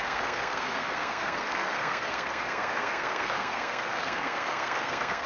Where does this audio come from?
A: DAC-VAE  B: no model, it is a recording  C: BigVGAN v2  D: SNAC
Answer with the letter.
D